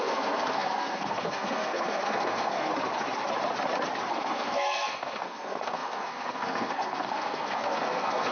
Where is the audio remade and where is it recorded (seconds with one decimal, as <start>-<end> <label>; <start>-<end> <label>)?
0.0-2.7 remade; 2.7-4.1 recorded; 4.1-8.3 remade